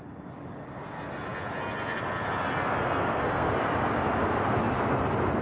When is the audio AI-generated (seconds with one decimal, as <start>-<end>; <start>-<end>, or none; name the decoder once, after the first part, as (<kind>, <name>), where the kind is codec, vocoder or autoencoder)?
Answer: 3.0-3.5 (codec, SNAC)